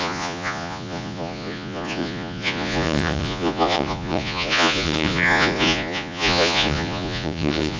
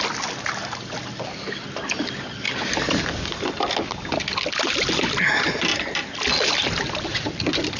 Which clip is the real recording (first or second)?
second